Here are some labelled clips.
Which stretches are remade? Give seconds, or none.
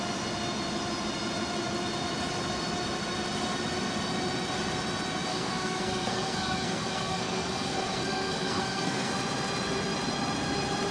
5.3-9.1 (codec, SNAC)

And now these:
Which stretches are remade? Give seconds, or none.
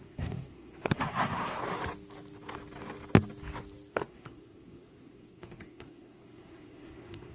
0.0-1.6 (codec, SNAC); 3.9-7.3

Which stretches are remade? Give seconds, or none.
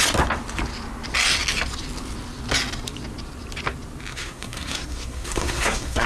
4.1-6.1 (codec, SNAC)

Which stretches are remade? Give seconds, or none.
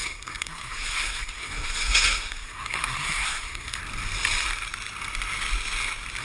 0.0-3.8 (codec, SNAC)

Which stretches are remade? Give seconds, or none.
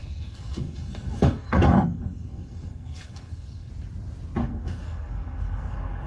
0.0-3.7 (codec, SNAC); 4.4-6.1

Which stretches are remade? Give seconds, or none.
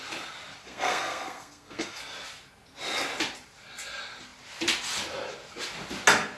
0.6-2.0 (codec, SNAC)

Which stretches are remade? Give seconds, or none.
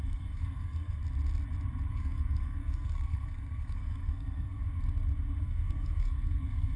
0.0-1.0 (codec, SNAC); 1.9-4.6; 5.4-6.8